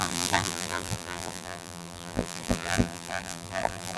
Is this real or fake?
fake